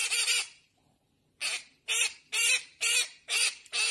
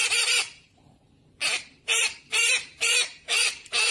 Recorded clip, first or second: first